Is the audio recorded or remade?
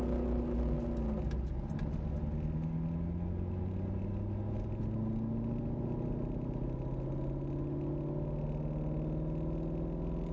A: recorded